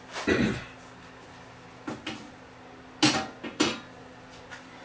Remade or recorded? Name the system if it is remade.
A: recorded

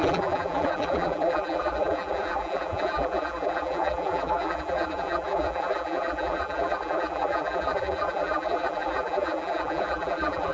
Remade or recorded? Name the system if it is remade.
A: remade, vocoder, BigVGAN v2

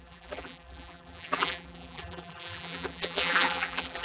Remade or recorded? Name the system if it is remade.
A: remade, vocoder, BigVGAN v2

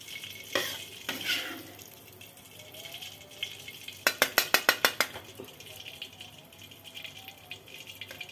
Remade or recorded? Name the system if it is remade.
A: recorded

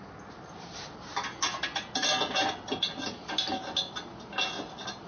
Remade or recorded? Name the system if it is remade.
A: recorded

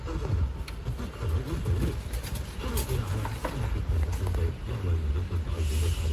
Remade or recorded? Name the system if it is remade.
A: recorded